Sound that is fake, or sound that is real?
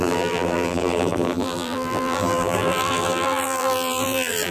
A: fake